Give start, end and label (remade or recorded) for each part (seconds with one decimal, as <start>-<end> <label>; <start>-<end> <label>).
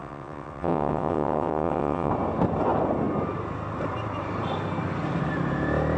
0.0-2.1 remade; 2.1-6.0 recorded